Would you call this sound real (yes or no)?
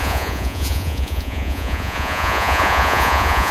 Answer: no